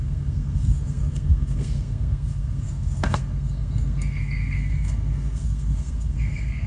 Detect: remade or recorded remade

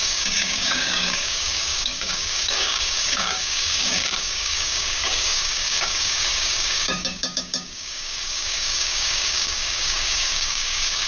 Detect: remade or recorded remade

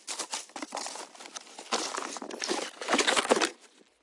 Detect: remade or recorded recorded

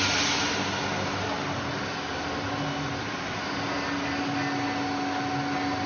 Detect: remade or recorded recorded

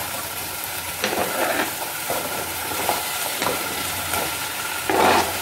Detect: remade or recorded remade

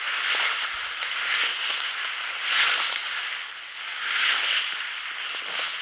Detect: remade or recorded recorded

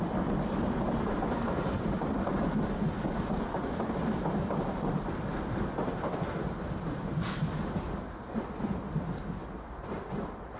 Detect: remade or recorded recorded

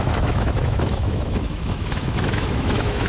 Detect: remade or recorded remade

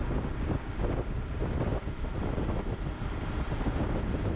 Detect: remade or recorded recorded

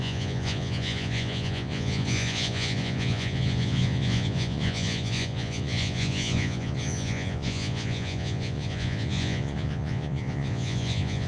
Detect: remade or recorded remade